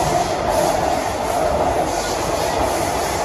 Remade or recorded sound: recorded